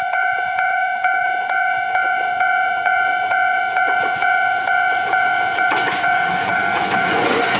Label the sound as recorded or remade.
remade